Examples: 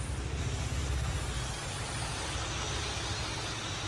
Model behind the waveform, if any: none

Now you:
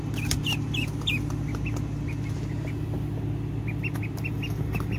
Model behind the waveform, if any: none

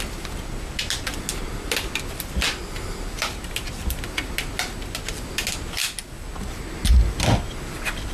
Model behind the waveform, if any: none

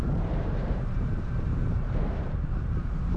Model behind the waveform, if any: vocoder, BigVGAN v2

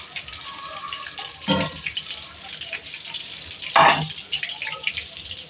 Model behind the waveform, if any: vocoder, BigVGAN v2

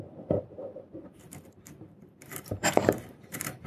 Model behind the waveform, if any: vocoder, BigVGAN v2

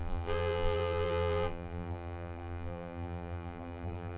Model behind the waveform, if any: vocoder, BigVGAN v2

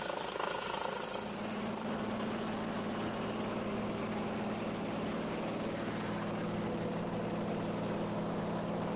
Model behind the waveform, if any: none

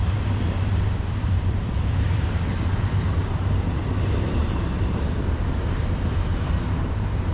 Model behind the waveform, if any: vocoder, BigVGAN v2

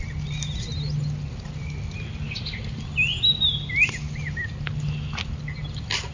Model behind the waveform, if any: none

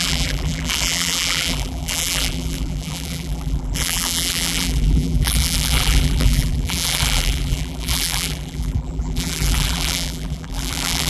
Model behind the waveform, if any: vocoder, BigVGAN v2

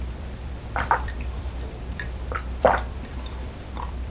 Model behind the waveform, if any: vocoder, BigVGAN v2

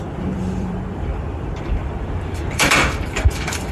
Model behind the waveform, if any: vocoder, BigVGAN v2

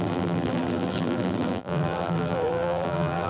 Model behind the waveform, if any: vocoder, BigVGAN v2